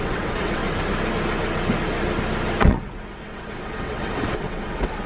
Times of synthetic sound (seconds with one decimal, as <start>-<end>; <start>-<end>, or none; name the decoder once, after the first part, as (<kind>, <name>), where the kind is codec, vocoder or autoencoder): 0.0-0.6 (vocoder, WaveNeXt); 2.6-5.1